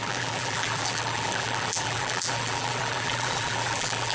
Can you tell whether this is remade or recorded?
remade